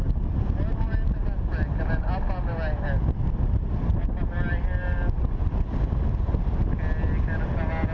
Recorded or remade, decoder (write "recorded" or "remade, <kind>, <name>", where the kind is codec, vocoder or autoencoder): recorded